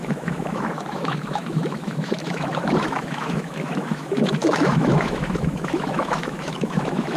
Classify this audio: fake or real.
fake